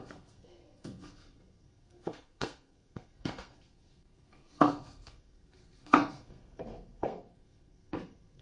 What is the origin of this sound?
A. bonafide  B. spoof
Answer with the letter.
B